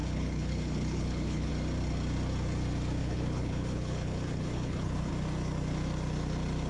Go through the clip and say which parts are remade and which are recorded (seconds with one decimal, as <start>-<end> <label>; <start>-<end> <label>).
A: 0.0-1.5 remade; 1.5-3.0 recorded; 3.0-5.1 remade; 5.1-6.7 recorded